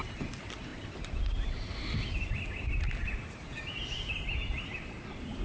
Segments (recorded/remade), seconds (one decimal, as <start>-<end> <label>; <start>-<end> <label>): 0.0-5.4 recorded